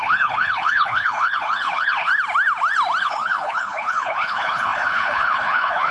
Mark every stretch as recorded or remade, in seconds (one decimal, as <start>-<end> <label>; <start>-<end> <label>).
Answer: 0.0-2.1 remade; 2.1-3.0 recorded; 3.0-5.9 remade